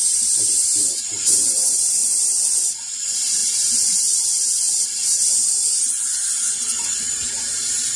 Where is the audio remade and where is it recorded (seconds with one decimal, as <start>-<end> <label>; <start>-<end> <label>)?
0.0-2.0 remade; 2.0-3.0 recorded; 3.0-5.6 remade; 5.6-7.1 recorded; 7.1-8.0 remade